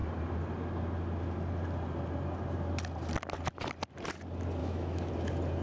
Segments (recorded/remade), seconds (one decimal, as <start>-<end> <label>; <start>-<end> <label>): 0.0-4.6 recorded; 4.6-5.1 remade; 5.1-5.6 recorded